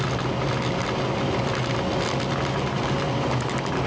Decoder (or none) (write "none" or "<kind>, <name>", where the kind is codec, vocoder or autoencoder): none